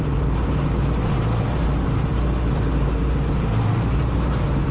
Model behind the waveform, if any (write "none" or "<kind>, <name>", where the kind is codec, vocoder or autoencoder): vocoder, BigVGAN v2